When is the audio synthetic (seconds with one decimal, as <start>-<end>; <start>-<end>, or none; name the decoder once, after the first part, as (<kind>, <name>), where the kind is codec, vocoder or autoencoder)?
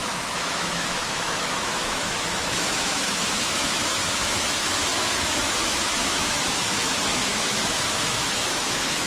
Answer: 0.0-9.1 (autoencoder, DAC-VAE)